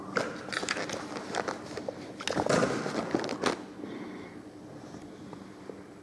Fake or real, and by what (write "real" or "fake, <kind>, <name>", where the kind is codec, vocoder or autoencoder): real